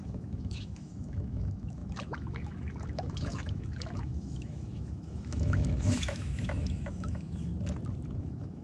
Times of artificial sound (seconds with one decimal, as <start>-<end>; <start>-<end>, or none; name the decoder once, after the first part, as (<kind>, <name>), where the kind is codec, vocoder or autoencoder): 0.0-7.5 (autoencoder, DAC-VAE); 8.2-8.6